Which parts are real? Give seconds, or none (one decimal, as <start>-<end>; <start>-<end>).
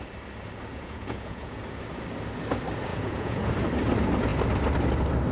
0.0-0.7; 1.6-2.9; 3.5-5.3